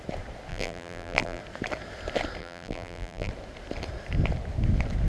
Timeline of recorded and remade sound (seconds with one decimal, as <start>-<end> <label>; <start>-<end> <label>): 0.0-0.5 recorded; 0.5-1.4 remade; 1.4-2.4 recorded; 2.4-3.3 remade; 3.3-5.1 recorded